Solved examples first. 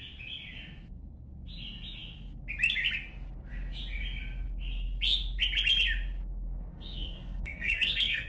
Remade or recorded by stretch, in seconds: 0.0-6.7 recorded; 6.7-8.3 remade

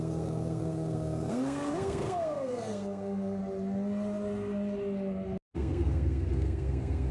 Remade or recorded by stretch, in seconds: 0.0-3.4 remade; 3.4-5.5 recorded; 5.5-7.1 remade

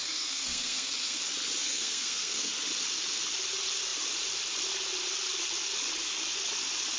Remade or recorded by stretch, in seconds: 0.0-1.2 remade; 1.2-1.6 recorded; 1.6-2.5 remade; 2.5-7.0 recorded

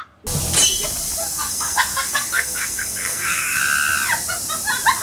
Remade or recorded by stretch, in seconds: 0.0-1.2 recorded; 1.2-3.6 remade; 3.6-5.0 recorded

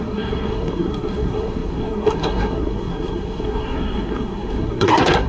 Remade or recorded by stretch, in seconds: 0.0-5.3 remade

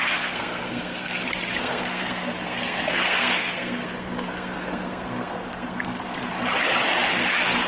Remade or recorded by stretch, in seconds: 0.0-1.1 remade; 1.1-1.6 recorded; 1.6-6.3 remade; 6.3-7.7 recorded

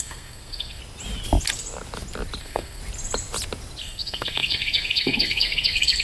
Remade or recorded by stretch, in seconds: 0.0-0.8 remade; 0.8-2.4 recorded; 2.4-2.8 remade; 2.8-3.8 recorded; 3.8-6.0 remade